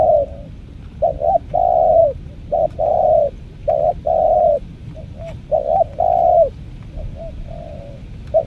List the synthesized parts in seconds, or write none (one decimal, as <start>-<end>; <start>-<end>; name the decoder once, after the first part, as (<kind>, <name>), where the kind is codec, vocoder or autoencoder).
2.0-2.6 (vocoder, BigVGAN v2)